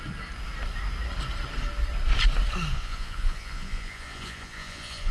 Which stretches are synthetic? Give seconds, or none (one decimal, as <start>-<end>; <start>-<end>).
2.7-5.1